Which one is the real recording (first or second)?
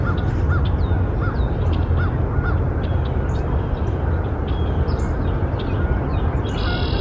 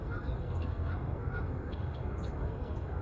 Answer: first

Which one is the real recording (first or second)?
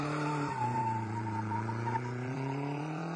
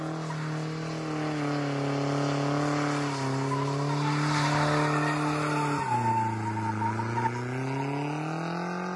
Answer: second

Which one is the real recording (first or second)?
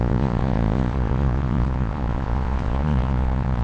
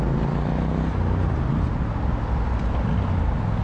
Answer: second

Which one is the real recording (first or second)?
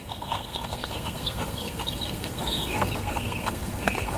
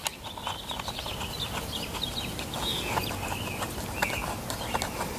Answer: second